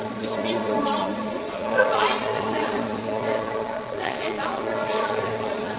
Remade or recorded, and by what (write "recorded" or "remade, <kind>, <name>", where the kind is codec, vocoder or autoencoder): remade, vocoder, Vocos